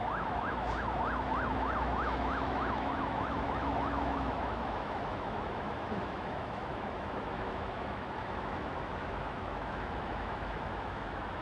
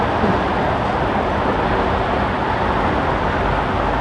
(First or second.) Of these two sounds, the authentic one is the second